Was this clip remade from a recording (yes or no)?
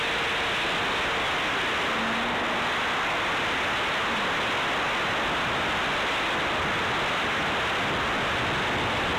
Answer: no